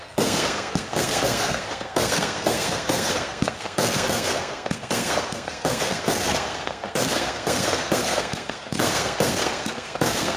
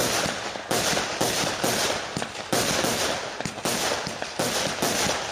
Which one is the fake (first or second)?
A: first